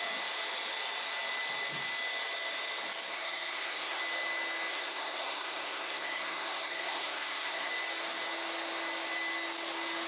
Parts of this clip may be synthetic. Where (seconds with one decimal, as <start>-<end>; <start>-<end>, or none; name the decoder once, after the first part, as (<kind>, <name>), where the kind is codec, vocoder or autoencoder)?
3.1-4.0 (codec, SNAC); 4.7-7.7